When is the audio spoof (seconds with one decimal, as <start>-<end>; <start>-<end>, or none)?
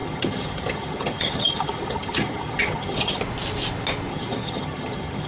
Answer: 0.0-3.2; 4.1-5.3